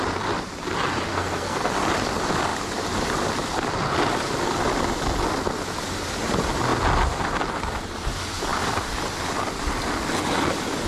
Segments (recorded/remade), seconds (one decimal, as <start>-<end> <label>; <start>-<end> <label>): 0.0-1.1 recorded; 1.1-1.7 remade; 1.7-10.9 recorded